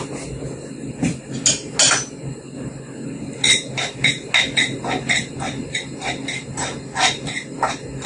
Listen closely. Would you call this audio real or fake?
real